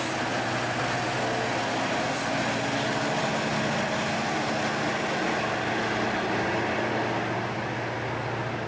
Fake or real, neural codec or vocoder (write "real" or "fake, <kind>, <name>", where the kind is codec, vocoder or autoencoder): real